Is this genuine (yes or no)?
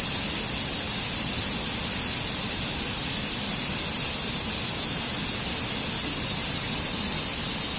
yes